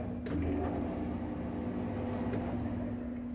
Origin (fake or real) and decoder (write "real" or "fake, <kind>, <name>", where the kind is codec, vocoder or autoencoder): real